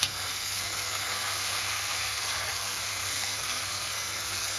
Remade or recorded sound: remade